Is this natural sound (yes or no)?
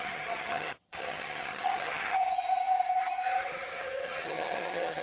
no